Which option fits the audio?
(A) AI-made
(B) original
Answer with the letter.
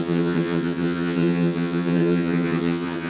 A